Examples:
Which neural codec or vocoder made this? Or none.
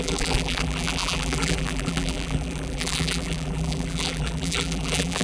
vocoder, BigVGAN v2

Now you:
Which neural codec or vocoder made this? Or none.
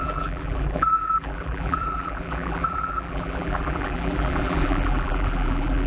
vocoder, BigVGAN v2